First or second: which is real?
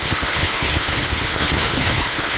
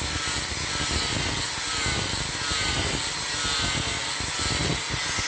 second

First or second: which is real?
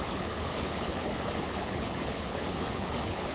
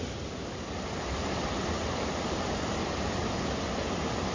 second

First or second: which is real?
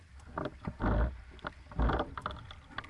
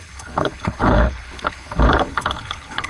first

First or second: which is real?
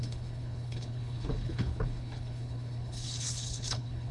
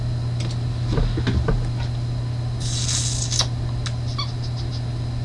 second